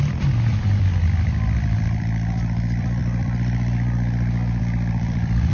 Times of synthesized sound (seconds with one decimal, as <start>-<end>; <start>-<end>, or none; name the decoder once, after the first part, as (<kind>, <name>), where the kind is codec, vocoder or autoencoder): 0.0-5.5 (vocoder, BigVGAN v2)